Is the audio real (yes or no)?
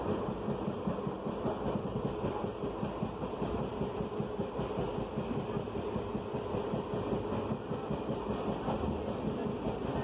yes